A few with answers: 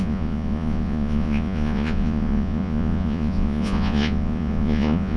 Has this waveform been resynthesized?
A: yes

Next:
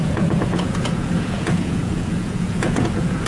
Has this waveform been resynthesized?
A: yes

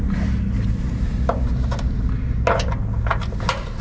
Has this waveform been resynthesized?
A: no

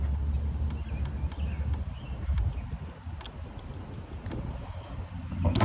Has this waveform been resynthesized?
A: no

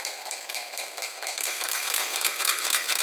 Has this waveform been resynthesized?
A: yes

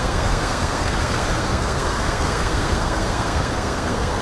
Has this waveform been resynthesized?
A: yes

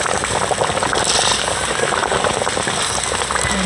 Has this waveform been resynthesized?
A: yes